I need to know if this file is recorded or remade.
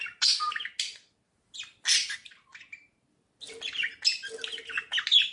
recorded